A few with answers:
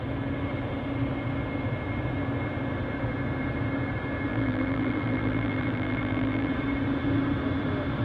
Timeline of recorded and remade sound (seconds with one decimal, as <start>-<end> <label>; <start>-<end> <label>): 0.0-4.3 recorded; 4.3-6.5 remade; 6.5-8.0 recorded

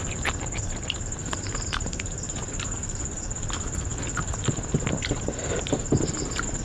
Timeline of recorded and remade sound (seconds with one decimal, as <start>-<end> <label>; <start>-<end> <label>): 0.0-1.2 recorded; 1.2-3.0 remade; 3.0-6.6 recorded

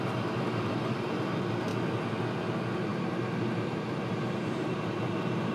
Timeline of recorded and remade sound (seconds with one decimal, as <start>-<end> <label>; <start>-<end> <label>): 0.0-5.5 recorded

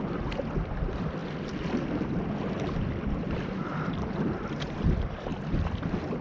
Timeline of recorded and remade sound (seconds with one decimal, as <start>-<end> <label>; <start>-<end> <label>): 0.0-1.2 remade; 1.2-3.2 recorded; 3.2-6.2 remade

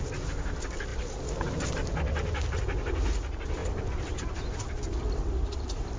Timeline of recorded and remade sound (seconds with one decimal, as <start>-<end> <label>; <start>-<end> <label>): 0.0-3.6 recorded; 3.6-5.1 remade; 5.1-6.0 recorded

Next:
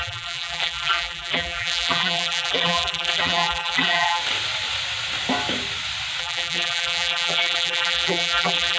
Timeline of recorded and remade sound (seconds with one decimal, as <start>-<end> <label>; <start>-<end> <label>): 0.0-4.2 remade; 4.2-6.2 recorded; 6.2-8.8 remade